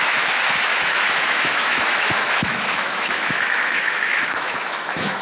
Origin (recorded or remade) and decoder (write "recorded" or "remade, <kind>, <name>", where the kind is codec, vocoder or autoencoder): remade, autoencoder, DAC-VAE